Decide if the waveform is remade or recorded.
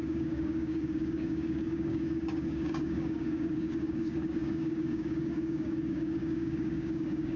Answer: remade